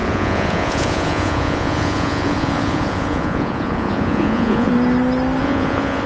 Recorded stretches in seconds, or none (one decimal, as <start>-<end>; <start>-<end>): 4.7-5.4